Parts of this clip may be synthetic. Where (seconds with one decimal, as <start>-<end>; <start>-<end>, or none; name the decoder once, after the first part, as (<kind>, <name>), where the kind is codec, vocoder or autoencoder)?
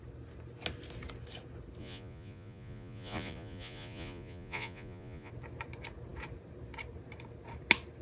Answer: 1.8-5.3 (vocoder, Vocos)